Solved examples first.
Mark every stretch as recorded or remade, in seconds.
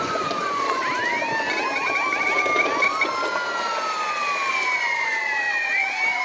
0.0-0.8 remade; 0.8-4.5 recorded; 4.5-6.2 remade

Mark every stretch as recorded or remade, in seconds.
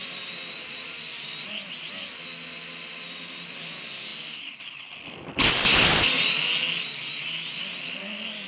0.0-8.5 recorded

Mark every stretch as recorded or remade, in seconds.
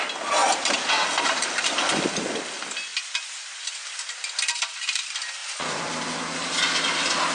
0.0-5.4 recorded; 5.4-5.9 remade; 5.9-7.3 recorded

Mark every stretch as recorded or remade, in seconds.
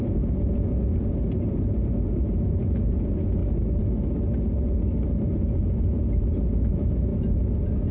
0.0-1.9 remade; 1.9-2.6 recorded; 2.6-3.4 remade; 3.4-5.3 recorded; 5.3-7.9 remade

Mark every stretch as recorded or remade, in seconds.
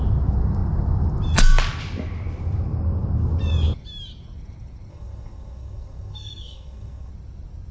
0.0-4.9 recorded; 4.9-7.1 remade; 7.1-7.7 recorded